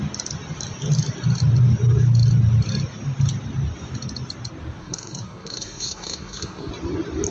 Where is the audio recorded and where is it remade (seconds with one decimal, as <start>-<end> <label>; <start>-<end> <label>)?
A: 0.0-4.8 recorded; 4.8-6.7 remade; 6.7-7.3 recorded